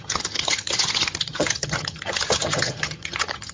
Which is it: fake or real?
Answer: fake